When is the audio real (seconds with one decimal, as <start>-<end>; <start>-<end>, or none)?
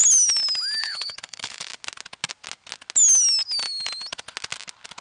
0.0-0.8; 1.7-5.0